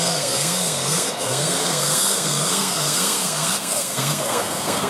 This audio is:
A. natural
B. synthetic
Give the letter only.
B